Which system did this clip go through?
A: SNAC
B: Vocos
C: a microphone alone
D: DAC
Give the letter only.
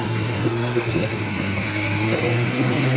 A